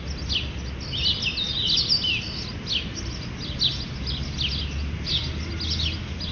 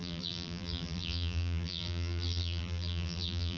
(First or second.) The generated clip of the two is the second